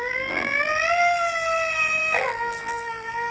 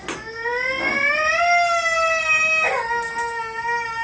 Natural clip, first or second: second